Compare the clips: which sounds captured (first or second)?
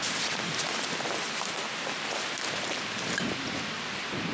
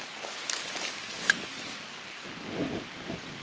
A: first